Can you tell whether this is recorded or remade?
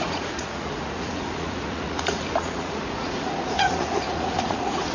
remade